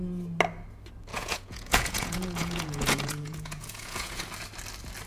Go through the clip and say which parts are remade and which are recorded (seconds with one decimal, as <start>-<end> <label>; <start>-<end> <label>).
0.0-1.1 recorded; 1.1-4.2 remade; 4.2-5.1 recorded